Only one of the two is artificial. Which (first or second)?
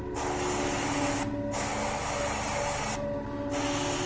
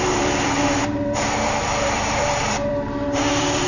second